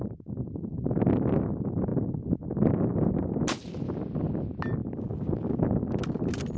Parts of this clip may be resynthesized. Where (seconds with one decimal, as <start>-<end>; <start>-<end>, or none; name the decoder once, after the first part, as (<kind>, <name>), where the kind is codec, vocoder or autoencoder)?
none